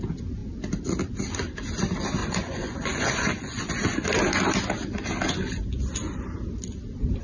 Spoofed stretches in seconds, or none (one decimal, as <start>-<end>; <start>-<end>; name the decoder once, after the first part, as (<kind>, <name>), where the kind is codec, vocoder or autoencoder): 2.2-3.7 (vocoder, Vocos)